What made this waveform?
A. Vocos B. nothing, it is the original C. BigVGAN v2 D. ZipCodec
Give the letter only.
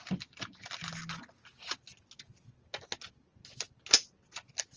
B